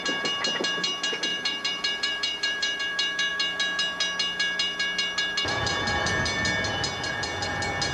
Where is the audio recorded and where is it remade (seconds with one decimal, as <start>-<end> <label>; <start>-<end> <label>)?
0.0-1.3 recorded; 1.3-2.8 remade; 2.8-7.9 recorded